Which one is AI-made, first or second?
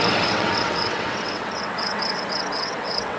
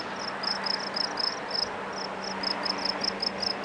first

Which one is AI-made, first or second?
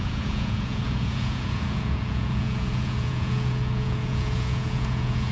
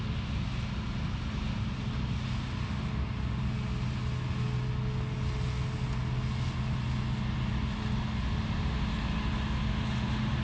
first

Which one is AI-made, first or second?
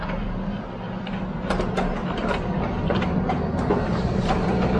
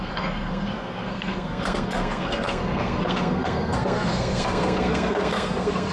second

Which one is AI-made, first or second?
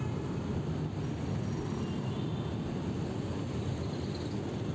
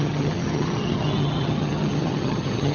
second